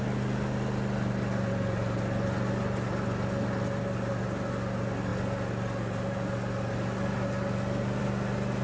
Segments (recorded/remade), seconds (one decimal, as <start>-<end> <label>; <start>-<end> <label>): 0.0-8.6 recorded